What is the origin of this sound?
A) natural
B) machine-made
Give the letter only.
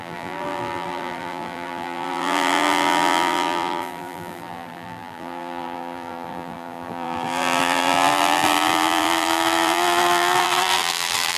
B